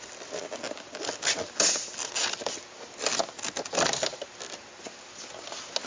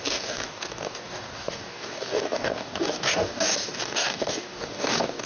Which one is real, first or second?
first